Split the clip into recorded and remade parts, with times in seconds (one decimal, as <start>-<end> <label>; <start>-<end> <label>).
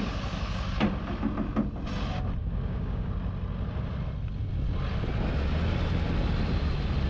0.0-2.4 recorded; 2.4-3.1 remade; 3.1-7.1 recorded